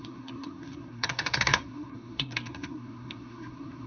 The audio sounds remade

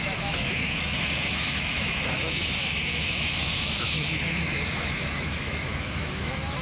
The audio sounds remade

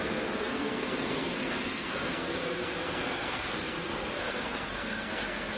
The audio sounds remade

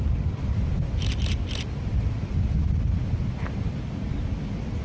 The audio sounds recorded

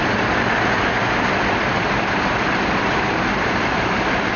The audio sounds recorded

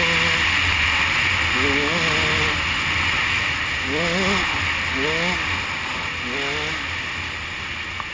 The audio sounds recorded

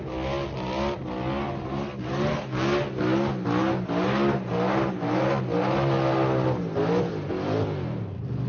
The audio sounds recorded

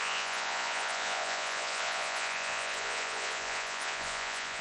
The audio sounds remade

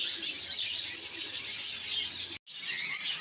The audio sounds recorded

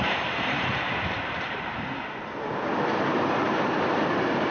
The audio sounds remade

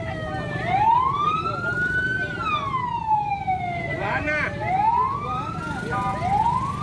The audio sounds recorded